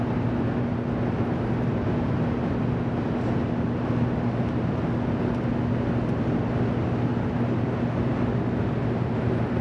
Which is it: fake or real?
real